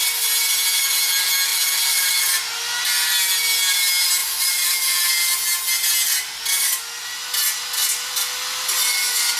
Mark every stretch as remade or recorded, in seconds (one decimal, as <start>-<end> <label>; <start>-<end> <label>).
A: 0.0-1.5 recorded; 1.5-2.2 remade; 2.2-4.2 recorded; 4.2-5.1 remade; 5.1-9.4 recorded